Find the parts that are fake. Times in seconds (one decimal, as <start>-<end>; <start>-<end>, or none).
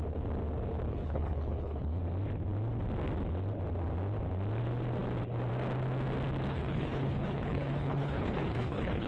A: 0.9-2.0; 6.5-9.1